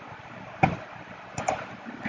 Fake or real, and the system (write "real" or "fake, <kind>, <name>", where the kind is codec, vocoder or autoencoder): real